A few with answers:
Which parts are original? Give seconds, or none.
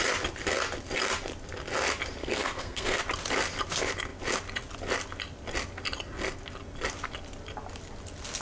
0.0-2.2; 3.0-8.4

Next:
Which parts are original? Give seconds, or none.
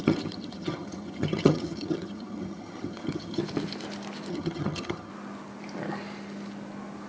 3.4-4.3; 5.1-7.1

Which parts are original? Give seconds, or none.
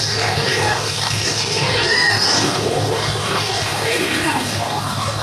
none